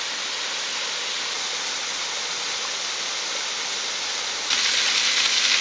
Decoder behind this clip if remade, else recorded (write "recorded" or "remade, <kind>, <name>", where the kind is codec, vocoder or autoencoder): recorded